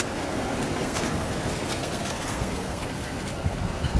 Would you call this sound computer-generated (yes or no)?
yes